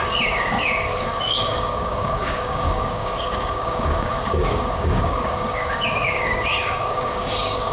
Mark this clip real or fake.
fake